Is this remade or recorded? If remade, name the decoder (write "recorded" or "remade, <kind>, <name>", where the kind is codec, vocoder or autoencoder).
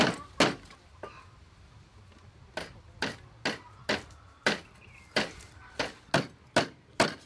recorded